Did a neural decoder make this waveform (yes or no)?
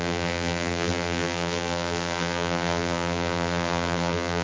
yes